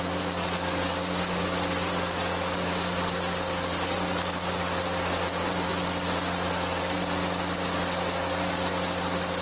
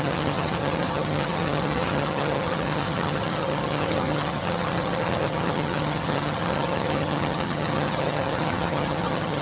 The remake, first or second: second